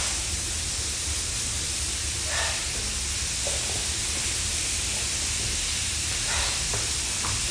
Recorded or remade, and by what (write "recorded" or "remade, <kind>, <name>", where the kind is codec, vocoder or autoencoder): recorded